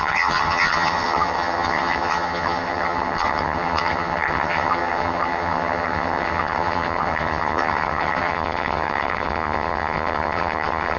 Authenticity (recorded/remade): remade